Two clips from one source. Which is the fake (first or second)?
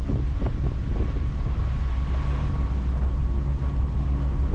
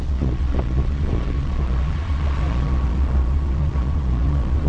second